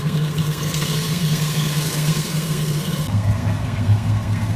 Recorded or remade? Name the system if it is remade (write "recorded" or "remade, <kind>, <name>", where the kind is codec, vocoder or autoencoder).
remade, codec, SNAC